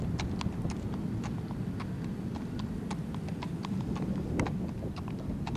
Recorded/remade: remade